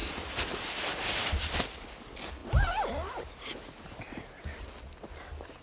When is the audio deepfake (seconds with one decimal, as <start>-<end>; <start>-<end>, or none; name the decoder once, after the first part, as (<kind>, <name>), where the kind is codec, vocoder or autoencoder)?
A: 0.9-1.9 (vocoder, BigVGAN v2)